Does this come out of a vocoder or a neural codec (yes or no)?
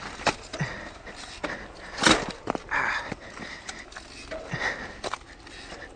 no